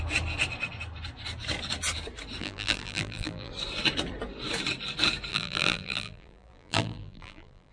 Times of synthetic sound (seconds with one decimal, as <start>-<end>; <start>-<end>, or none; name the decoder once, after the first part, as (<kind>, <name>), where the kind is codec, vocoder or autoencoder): 2.4-3.5 (vocoder, BigVGAN v2); 5.3-7.7